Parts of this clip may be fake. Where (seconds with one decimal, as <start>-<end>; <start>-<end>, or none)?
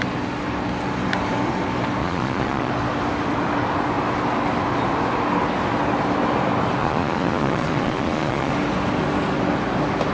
2.0-2.7; 6.8-8.5